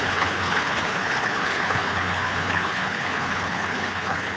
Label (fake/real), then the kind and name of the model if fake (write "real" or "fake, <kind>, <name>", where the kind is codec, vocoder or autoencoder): fake, codec, HILCodec